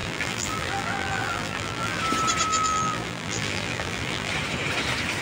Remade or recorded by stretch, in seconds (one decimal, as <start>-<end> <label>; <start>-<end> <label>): 0.0-2.0 remade; 2.0-2.5 recorded; 2.5-4.3 remade; 4.3-5.2 recorded